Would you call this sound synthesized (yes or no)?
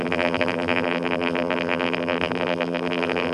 yes